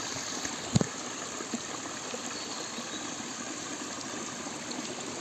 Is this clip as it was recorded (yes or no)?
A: yes